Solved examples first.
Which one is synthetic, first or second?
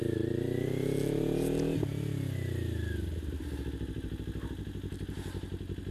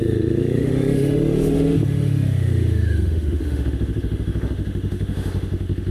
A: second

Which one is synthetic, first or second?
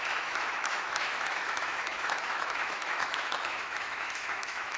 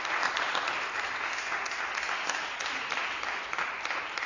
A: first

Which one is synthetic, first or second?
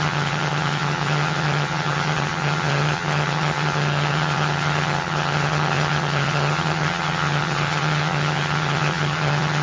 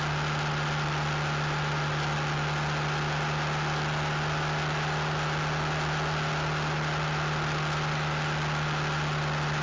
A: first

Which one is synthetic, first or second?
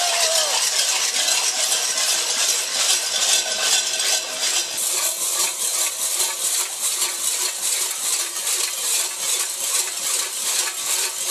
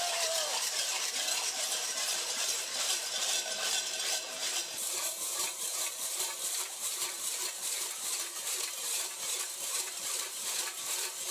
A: second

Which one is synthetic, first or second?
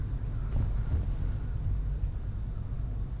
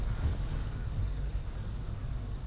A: second